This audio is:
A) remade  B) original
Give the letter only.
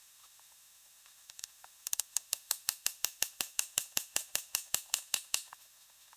A